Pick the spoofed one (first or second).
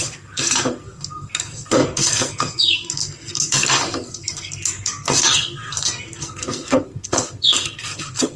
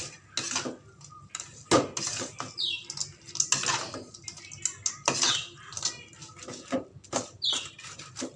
first